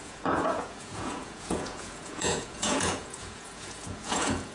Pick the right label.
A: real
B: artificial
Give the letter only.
B